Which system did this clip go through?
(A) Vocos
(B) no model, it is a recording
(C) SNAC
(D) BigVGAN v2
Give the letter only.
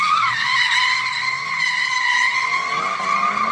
B